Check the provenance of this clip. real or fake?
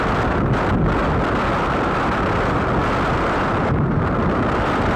real